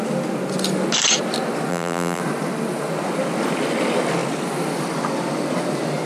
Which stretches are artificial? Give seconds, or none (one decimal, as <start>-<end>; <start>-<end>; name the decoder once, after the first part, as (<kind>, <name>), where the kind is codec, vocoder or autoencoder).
1.7-2.2 (vocoder, BigVGAN v2)